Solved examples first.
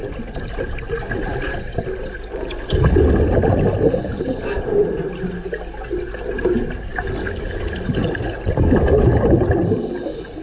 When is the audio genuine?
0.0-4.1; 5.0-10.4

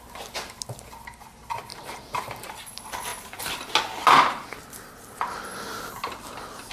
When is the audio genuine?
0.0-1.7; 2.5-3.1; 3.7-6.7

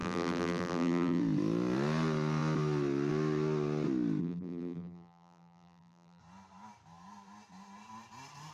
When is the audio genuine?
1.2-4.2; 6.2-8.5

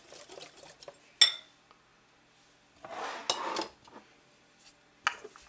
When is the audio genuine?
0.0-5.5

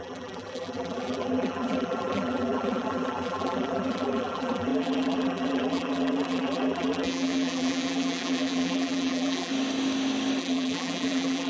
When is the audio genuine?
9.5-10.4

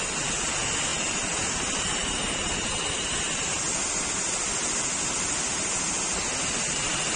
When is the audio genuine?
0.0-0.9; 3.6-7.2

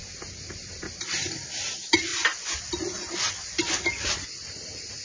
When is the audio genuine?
none

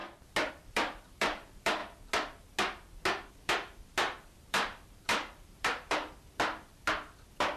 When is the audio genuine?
0.0-0.5; 1.8-3.3